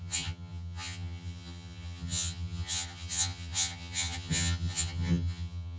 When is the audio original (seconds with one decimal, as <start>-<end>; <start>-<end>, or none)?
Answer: none

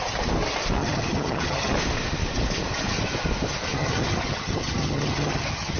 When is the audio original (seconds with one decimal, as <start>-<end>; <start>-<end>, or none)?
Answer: 0.0-0.8; 1.7-3.7

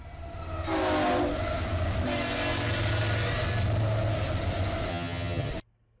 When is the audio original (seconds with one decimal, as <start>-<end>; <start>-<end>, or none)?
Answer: 0.0-4.9; 5.5-6.0

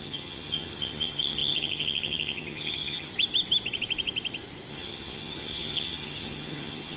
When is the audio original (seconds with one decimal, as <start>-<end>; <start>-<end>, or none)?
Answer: 3.1-4.7

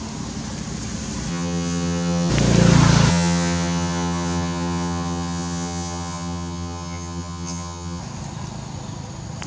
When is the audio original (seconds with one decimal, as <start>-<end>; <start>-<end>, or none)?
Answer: 0.0-1.3; 2.3-3.1; 8.0-9.5

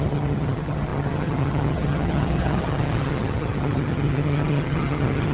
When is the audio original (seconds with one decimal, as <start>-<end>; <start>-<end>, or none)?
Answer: none